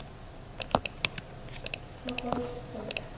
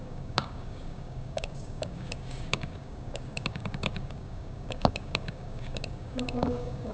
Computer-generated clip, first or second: second